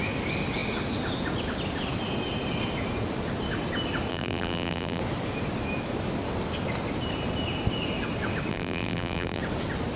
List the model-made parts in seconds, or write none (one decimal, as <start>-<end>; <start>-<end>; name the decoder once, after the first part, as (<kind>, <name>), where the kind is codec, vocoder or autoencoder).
4.1-5.0 (vocoder, BigVGAN v2); 8.5-9.4